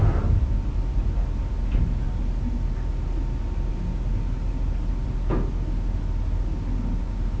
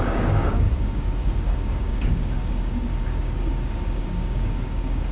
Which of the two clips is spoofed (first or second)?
second